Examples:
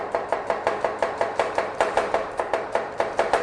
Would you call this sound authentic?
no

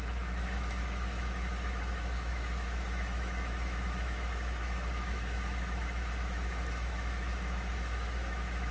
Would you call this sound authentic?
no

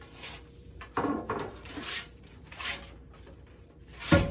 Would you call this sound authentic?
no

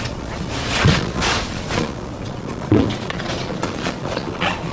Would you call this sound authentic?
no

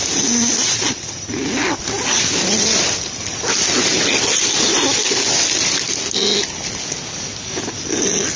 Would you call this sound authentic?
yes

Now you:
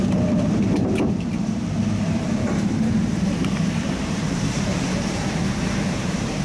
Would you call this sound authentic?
no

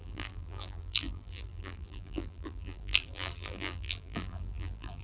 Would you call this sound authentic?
no